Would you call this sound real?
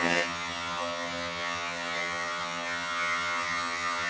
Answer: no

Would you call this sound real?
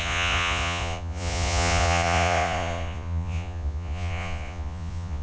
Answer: no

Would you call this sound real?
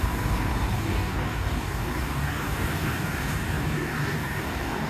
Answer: no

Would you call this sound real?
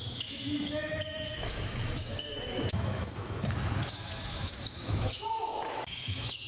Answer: no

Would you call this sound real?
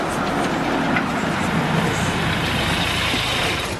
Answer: yes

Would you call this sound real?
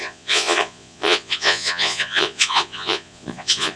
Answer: no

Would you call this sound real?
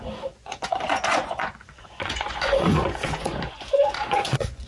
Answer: no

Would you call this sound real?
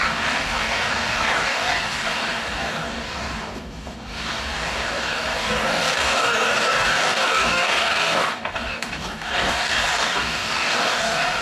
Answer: no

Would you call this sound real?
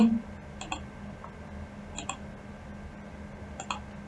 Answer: yes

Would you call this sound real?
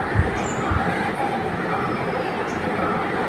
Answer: yes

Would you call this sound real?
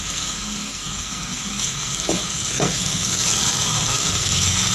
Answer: no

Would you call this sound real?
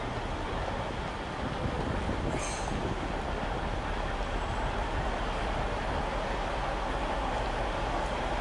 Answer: yes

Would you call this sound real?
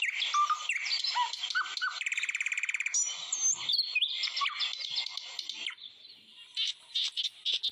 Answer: yes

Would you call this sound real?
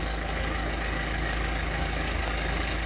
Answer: no